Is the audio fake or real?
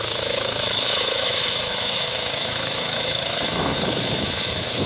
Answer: fake